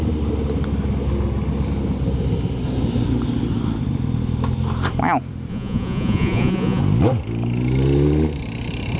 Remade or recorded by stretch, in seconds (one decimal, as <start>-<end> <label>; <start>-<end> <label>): 0.0-5.5 recorded; 5.5-6.8 remade; 6.8-9.0 recorded